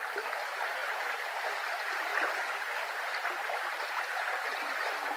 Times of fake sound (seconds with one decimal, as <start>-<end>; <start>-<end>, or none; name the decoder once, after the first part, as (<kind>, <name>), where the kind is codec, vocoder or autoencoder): none